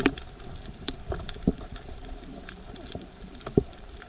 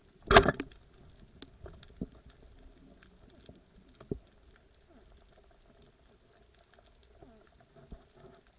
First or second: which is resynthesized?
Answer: first